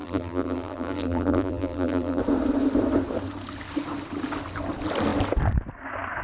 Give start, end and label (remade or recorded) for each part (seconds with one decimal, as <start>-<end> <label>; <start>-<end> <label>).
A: 0.0-2.2 remade; 2.2-6.2 recorded